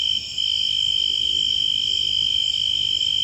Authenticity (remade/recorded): recorded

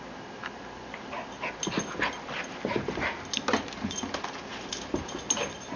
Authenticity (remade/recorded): recorded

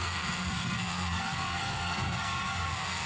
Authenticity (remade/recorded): remade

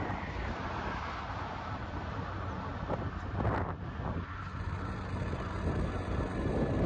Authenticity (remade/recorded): recorded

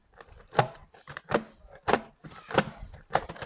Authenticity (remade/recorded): recorded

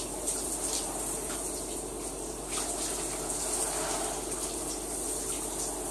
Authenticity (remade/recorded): recorded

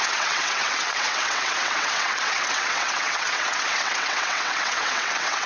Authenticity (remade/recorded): remade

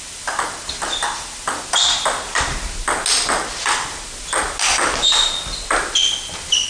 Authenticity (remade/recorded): recorded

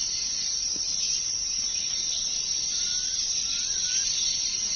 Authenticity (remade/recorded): remade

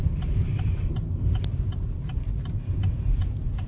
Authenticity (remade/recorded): remade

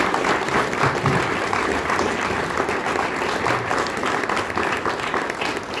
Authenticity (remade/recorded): recorded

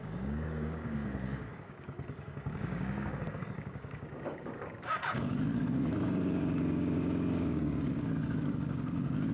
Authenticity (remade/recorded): remade